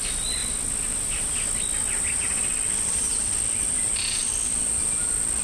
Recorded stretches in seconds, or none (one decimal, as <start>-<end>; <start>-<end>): 0.0-5.4